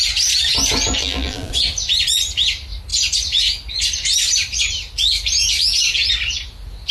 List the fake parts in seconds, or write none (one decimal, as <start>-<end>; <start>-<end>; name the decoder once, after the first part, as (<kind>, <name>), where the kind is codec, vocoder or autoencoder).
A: 1.0-1.5 (vocoder, BigVGAN v2)